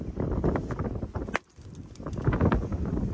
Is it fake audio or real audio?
real